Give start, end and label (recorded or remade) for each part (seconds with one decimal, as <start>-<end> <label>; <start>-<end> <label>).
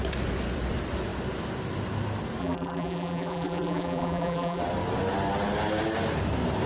0.0-2.4 recorded; 2.4-4.6 remade; 4.6-6.7 recorded